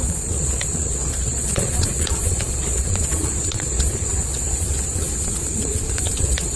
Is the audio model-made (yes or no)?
yes